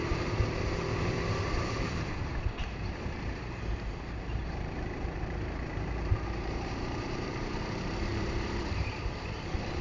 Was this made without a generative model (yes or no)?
no